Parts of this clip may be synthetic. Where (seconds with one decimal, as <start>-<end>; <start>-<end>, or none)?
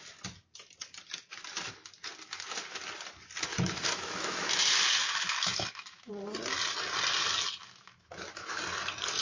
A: 3.5-4.5; 5.0-6.1; 7.6-8.6